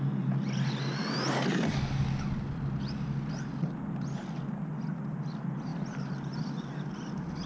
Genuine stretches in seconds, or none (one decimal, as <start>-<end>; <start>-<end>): 0.0-7.5